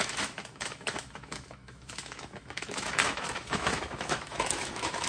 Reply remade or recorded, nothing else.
remade